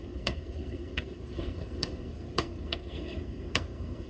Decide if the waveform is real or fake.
fake